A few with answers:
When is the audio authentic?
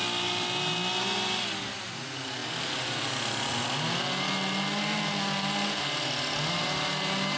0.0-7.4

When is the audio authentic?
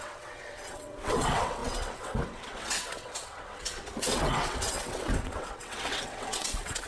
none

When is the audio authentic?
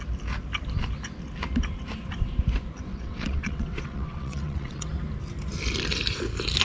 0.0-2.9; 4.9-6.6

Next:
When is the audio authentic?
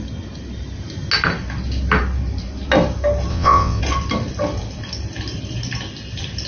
0.0-3.3; 3.8-6.5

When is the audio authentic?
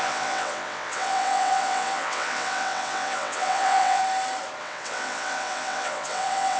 4.0-4.6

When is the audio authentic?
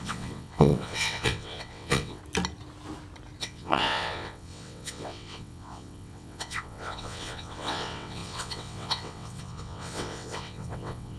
2.2-3.4